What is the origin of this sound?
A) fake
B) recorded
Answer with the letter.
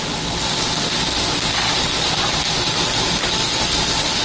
B